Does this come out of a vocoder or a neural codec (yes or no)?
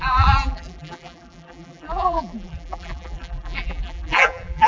yes